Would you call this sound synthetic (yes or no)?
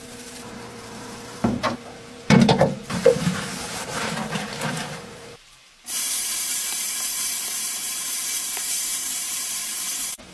yes